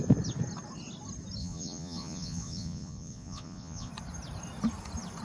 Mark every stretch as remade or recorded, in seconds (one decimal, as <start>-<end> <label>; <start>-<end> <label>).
0.0-1.4 recorded; 1.4-3.9 remade; 3.9-5.2 recorded